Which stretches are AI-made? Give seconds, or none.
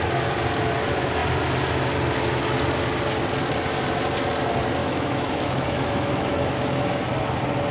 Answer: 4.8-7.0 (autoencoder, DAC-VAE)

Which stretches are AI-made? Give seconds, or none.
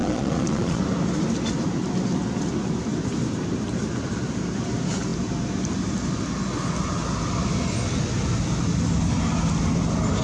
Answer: 0.0-0.8 (vocoder, Vocos)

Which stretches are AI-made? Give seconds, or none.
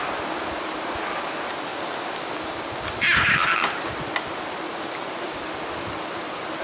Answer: none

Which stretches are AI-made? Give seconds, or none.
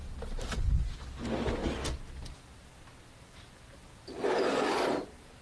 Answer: none